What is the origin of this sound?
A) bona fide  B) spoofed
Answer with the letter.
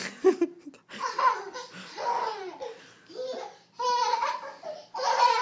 A